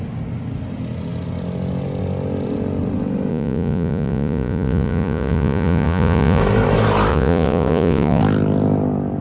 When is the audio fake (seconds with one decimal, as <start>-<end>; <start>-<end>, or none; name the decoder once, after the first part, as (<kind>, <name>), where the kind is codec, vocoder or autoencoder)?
3.3-6.4 (vocoder, Vocos); 7.1-8.2